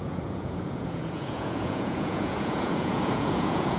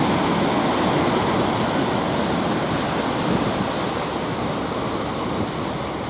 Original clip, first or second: second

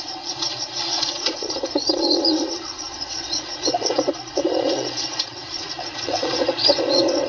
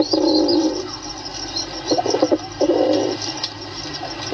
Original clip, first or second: second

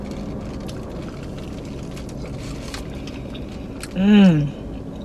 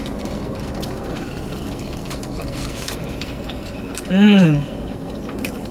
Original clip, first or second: first